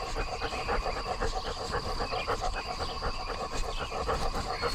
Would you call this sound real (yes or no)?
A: yes